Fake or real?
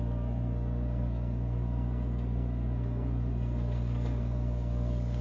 fake